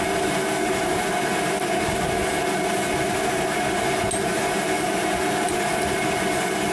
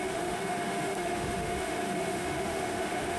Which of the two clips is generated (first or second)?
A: second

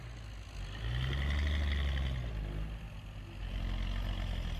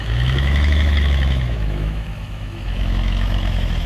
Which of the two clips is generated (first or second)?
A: second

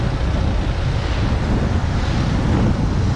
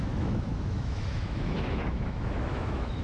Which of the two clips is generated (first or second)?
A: second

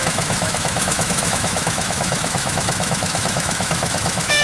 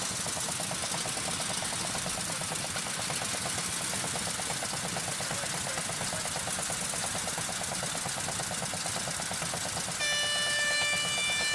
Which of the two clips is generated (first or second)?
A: first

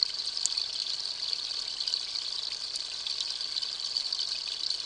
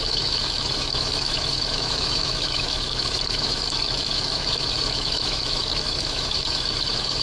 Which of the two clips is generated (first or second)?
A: second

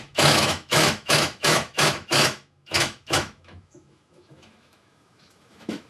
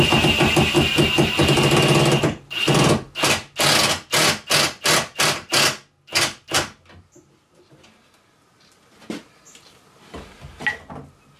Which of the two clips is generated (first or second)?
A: first